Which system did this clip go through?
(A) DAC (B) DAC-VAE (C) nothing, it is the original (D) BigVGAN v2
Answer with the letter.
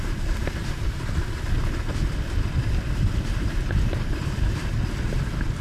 C